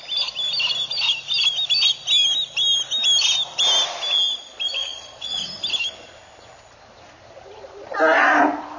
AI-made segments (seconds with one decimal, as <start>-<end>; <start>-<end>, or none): 4.8-5.4